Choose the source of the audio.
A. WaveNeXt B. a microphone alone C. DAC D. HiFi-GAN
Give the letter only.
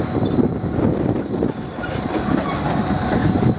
B